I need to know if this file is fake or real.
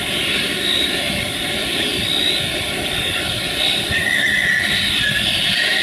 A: real